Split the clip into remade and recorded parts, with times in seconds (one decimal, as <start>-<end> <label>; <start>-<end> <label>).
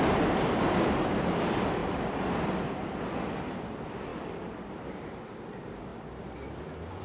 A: 0.0-1.8 recorded; 1.8-2.7 remade; 2.7-4.1 recorded; 4.1-5.2 remade; 5.2-5.9 recorded; 5.9-7.0 remade